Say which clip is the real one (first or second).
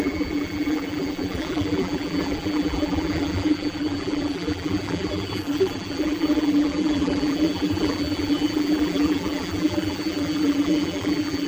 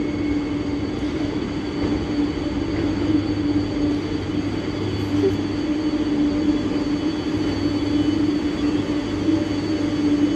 second